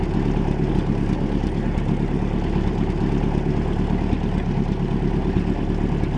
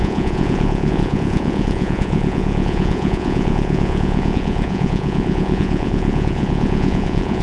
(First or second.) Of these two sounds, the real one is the first